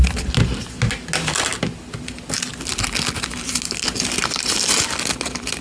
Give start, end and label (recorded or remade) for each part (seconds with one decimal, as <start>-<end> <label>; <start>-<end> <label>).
0.0-5.6 recorded

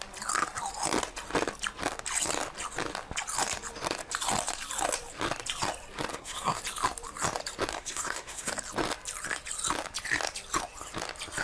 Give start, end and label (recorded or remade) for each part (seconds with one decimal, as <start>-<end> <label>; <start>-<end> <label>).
0.0-6.1 recorded; 6.1-6.6 remade; 6.6-7.7 recorded; 7.7-8.5 remade; 8.5-11.4 recorded